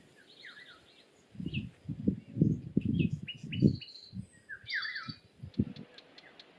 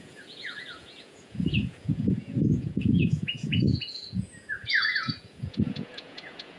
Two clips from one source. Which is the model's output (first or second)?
second